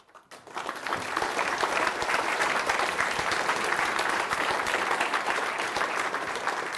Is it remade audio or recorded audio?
remade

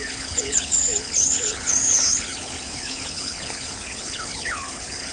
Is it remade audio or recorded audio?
remade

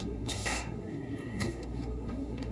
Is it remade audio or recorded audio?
remade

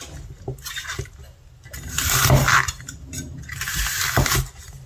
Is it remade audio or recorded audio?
recorded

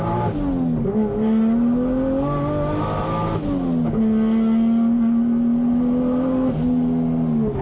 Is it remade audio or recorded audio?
recorded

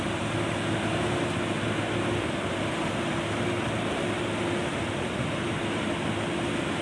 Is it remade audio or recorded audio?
recorded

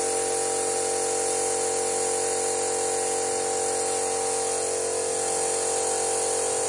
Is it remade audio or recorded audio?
recorded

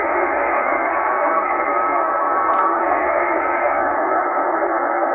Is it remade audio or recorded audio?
remade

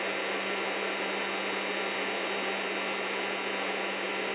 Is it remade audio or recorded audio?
recorded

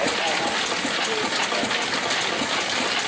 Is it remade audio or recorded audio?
recorded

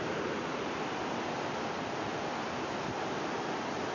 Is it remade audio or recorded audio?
recorded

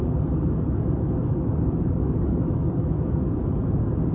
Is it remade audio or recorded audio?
remade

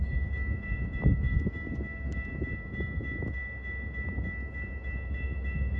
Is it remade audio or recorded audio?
remade